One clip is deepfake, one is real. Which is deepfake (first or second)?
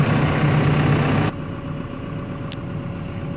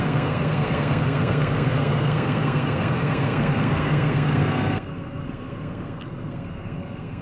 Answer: second